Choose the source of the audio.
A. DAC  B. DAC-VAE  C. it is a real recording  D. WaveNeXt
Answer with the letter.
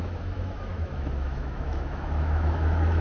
B